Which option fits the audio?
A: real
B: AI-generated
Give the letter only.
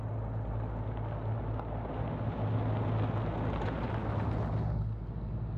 A